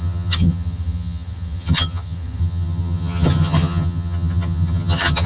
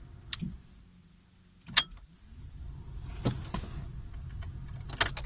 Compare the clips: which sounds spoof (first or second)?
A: first